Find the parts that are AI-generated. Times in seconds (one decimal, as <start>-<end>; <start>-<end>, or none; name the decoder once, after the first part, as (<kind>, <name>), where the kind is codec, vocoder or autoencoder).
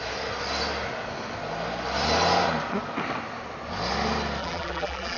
4.4-5.2 (vocoder, BigVGAN v2)